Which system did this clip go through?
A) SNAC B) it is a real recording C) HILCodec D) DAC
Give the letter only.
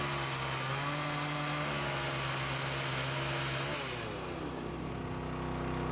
B